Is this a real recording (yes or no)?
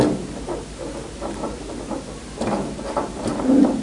no